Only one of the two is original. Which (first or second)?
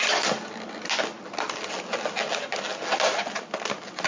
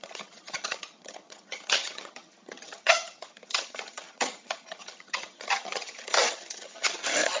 first